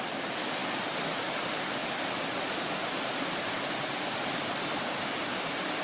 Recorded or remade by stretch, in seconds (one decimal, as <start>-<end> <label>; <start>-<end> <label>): 0.0-0.6 recorded; 0.6-1.4 remade; 1.4-1.8 recorded; 1.8-5.3 remade; 5.3-5.8 recorded